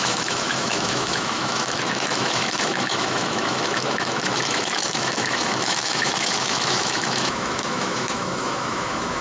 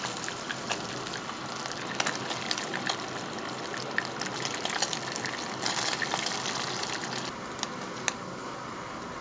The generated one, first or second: first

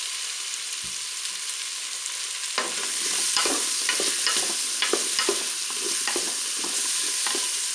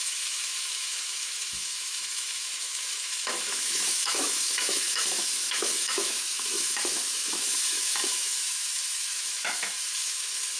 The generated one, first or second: second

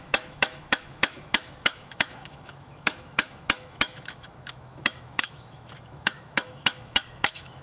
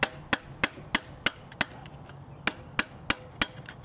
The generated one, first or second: first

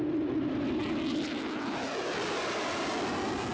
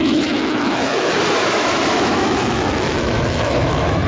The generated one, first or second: second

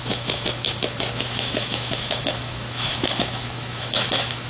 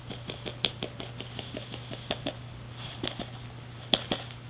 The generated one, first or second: first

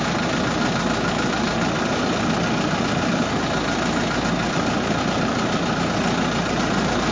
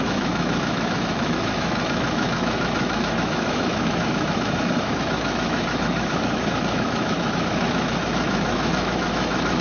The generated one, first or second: second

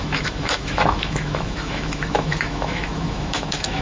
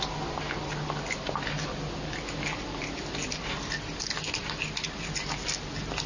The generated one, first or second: first